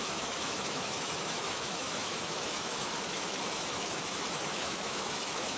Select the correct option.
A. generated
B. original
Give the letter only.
A